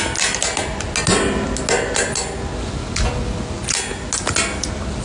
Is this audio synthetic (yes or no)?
no